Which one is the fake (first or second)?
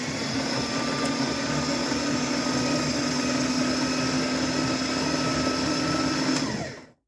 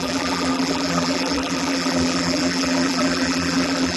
second